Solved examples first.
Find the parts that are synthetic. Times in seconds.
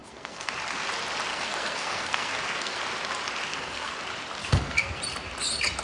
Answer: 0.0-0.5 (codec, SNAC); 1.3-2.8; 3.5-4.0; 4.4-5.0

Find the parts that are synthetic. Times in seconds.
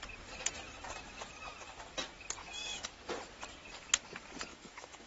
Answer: 2.4-2.9 (autoencoder, DAC-VAE); 4.5-5.1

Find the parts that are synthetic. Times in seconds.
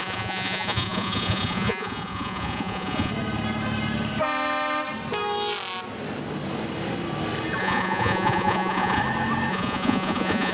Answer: 0.0-3.1 (vocoder, Vocos); 7.6-9.0; 9.5-10.5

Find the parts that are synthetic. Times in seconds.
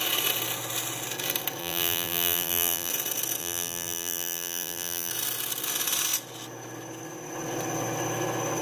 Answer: 1.6-2.9 (vocoder, BigVGAN v2); 3.4-5.1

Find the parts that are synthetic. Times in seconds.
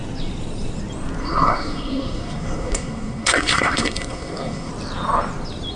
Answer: 1.2-4.7 (codec, SNAC)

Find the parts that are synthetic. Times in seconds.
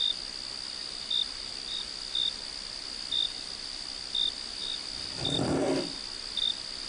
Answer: none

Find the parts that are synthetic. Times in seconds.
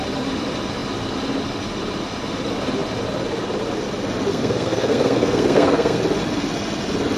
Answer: 4.3-6.0 (codec, SNAC)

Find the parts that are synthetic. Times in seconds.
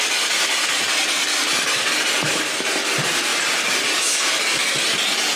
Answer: none